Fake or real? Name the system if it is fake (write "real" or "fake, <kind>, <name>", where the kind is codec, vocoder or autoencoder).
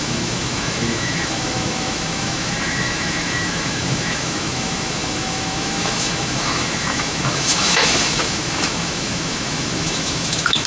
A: fake, autoencoder, DAC-VAE